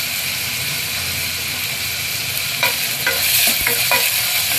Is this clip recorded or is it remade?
recorded